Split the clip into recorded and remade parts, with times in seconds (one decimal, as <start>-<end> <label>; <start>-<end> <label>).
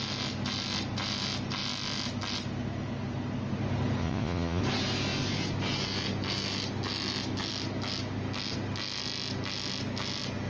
0.0-4.0 recorded; 4.0-4.6 remade; 4.6-10.5 recorded